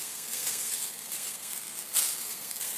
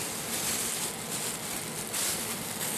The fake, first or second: first